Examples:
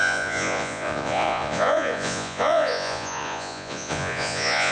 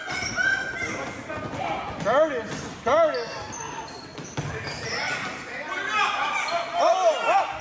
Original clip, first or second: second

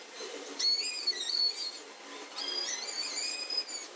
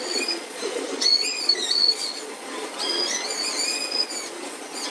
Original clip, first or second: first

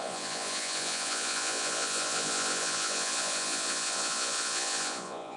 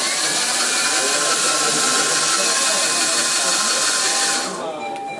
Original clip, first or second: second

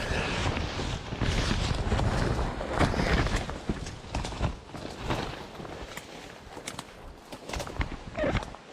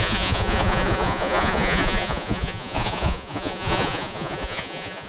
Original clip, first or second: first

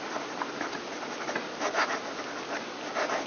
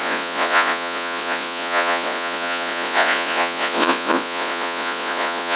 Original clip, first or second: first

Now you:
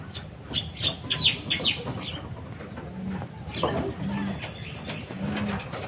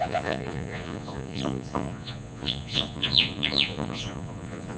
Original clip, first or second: first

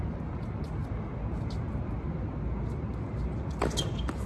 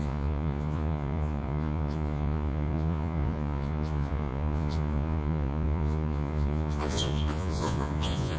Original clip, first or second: first